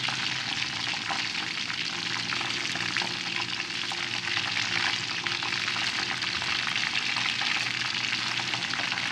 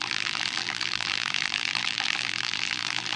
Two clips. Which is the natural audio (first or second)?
first